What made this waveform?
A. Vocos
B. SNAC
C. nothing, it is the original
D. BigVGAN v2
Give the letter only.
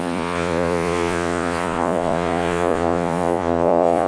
A